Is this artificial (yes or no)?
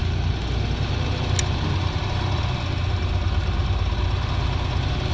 no